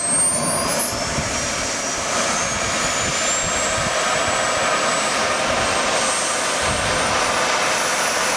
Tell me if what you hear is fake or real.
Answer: real